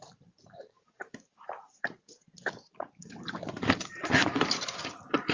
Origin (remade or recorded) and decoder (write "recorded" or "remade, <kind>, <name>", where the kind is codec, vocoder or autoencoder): remade, vocoder, BigVGAN v2